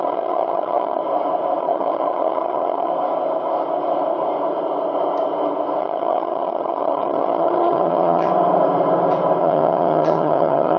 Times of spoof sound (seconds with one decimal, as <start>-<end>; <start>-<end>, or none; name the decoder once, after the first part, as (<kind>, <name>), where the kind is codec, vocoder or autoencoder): 0.0-1.0 (vocoder, HiFi-GAN); 1.6-2.9; 5.8-8.3; 9.4-10.8